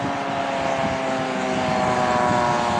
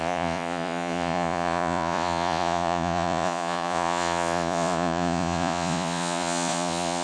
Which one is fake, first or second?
second